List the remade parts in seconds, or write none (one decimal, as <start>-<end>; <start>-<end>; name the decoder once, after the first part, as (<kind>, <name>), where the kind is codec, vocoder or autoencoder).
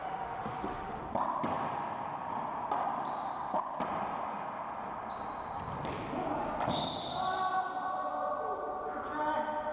0.0-1.0 (autoencoder, DAC-VAE)